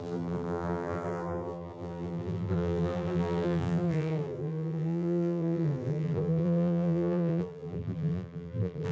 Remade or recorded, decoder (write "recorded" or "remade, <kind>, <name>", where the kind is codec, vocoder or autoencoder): remade, vocoder, BigVGAN v2